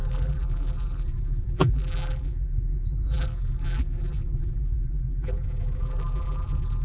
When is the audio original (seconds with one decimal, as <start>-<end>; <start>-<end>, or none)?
none